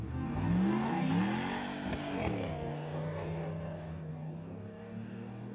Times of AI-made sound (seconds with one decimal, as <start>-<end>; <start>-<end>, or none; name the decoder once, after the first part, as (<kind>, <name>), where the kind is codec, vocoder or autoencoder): 0.0-1.1 (codec, DAC); 2.0-5.5